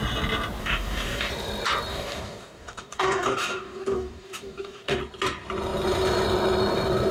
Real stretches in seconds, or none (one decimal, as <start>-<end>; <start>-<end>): 0.0-0.6; 1.3-1.9; 5.0-7.1